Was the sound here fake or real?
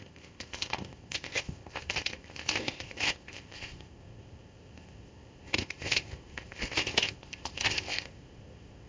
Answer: fake